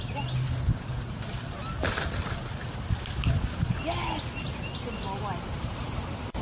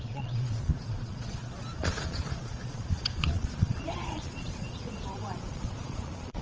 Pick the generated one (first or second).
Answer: second